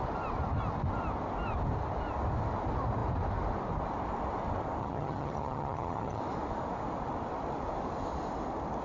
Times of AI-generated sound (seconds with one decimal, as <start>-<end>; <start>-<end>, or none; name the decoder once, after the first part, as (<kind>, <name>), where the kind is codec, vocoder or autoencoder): 4.8-6.2 (vocoder, HiFi-GAN)